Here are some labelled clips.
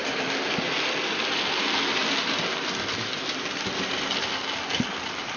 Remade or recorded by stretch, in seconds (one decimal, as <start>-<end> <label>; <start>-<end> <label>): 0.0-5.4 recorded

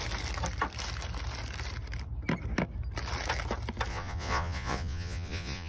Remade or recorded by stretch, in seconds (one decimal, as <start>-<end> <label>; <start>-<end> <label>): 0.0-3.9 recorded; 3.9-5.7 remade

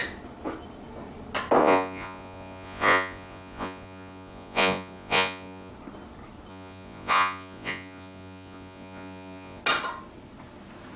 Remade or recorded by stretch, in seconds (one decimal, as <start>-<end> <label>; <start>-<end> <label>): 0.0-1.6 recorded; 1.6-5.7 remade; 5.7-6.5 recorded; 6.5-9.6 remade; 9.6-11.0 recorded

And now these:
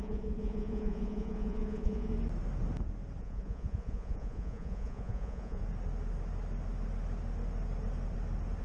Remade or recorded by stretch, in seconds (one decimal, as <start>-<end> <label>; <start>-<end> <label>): 0.0-2.1 remade; 2.1-3.2 recorded; 3.2-5.6 remade; 5.6-8.6 recorded